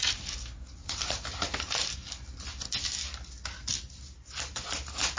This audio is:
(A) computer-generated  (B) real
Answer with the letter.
B